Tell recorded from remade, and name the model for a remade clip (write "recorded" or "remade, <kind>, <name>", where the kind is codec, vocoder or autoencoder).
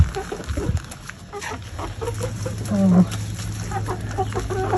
recorded